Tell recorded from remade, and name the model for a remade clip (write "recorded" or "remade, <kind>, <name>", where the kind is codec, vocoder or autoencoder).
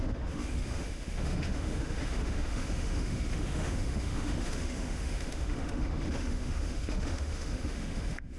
remade, autoencoder, DAC-VAE